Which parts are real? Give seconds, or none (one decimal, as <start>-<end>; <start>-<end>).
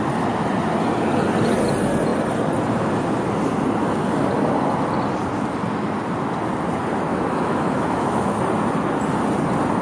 0.0-7.1; 8.4-9.8